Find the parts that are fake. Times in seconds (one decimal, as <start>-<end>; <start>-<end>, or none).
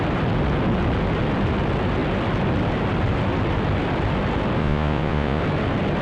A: 4.6-5.4